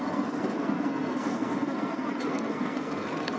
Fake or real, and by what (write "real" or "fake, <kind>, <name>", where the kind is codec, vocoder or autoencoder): fake, codec, SNAC